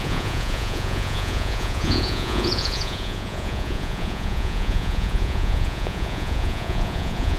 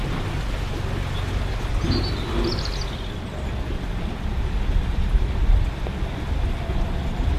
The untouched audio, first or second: second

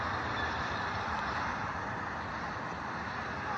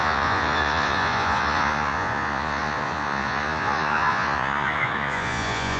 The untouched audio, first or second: first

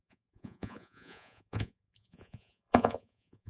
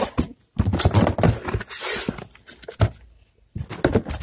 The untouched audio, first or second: second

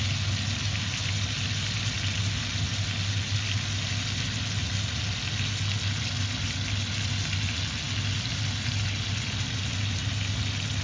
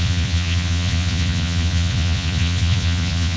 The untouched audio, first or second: first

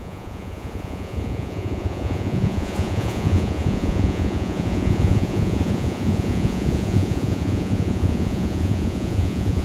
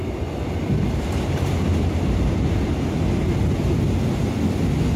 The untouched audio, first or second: second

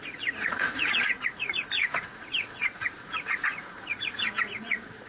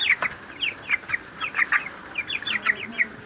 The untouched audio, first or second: second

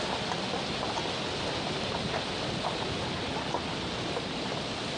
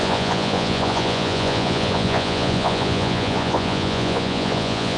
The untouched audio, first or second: first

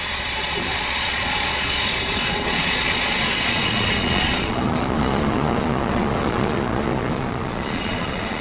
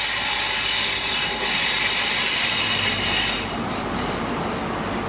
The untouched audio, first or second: second